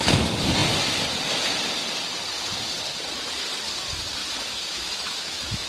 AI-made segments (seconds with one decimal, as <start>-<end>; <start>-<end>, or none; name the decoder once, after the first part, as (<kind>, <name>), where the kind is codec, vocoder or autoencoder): 4.2-5.7 (autoencoder, DAC-VAE)